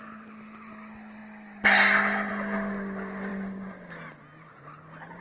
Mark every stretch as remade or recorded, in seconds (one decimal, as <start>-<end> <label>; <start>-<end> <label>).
0.0-5.2 recorded